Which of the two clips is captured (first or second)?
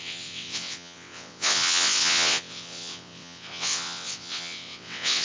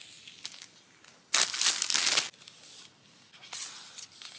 second